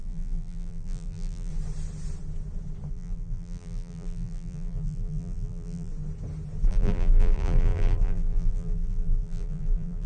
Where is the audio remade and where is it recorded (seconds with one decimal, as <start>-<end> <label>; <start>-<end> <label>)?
0.0-1.5 remade; 1.5-2.9 recorded; 2.9-5.9 remade; 5.9-6.7 recorded; 6.7-10.1 remade